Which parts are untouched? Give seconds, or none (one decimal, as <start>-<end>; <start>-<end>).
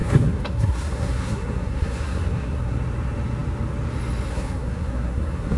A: 2.8-4.3